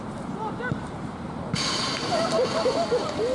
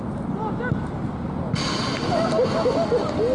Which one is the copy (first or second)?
first